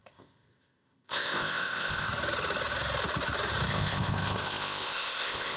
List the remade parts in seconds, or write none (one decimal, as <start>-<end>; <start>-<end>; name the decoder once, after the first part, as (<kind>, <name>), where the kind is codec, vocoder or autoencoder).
0.0-2.1 (codec, ZipCodec); 3.7-5.6